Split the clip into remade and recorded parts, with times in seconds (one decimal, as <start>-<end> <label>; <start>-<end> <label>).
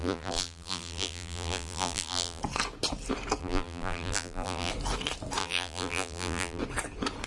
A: 0.0-2.4 remade; 2.4-3.4 recorded; 3.4-4.7 remade; 4.7-5.4 recorded; 5.4-6.6 remade; 6.6-7.3 recorded